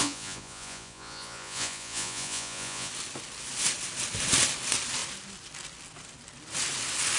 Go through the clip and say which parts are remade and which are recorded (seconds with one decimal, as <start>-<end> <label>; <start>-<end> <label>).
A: 0.0-2.9 remade; 2.9-7.2 recorded